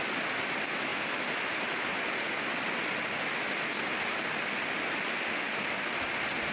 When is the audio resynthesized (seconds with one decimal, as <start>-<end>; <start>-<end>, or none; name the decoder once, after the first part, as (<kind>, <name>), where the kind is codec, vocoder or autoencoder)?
none